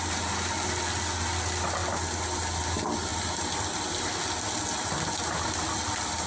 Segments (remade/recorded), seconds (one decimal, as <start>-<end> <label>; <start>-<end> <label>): 0.0-6.3 recorded